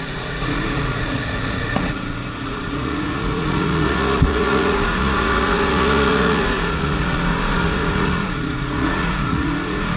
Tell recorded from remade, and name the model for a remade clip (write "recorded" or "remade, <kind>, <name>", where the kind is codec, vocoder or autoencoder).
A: remade, vocoder, Vocos